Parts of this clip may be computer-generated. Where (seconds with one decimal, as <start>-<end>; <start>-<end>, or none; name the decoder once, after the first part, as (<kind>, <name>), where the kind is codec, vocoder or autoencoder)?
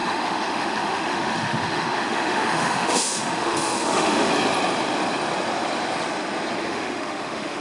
0.0-4.3 (autoencoder, DAC-VAE); 6.6-7.6